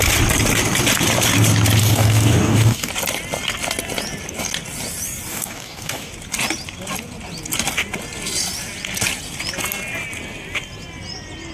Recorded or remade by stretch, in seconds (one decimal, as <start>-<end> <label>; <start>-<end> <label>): 0.0-1.8 recorded; 1.8-2.9 remade; 2.9-5.3 recorded; 5.3-6.1 remade; 6.1-11.5 recorded